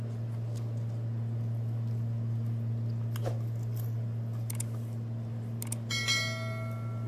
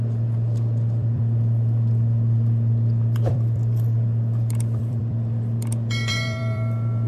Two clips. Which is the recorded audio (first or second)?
first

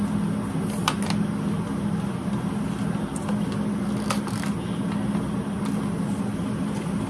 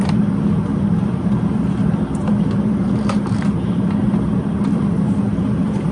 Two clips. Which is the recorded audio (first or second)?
first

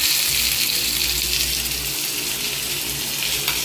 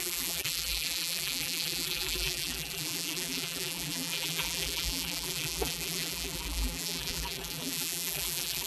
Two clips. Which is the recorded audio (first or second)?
first